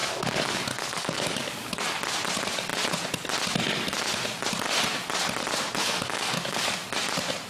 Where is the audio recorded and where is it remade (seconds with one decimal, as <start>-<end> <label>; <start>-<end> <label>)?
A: 0.0-1.8 remade; 1.8-5.8 recorded; 5.8-6.8 remade; 6.8-7.5 recorded

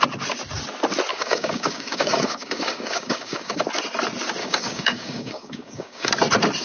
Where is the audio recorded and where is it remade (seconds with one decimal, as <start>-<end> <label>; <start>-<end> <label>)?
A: 0.0-1.1 recorded; 1.1-3.6 remade; 3.6-4.4 recorded; 4.4-6.1 remade; 6.1-6.6 recorded

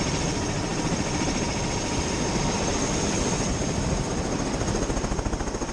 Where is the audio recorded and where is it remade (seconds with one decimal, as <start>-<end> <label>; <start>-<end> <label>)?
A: 0.0-5.7 recorded

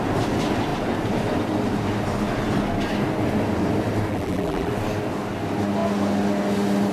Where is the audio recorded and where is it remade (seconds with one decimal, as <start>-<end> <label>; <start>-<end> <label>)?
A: 0.0-4.1 recorded; 4.1-4.7 remade; 4.7-6.9 recorded